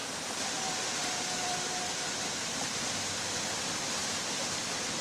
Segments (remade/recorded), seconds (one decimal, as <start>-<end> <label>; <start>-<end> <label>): 0.0-3.0 remade; 3.0-5.0 recorded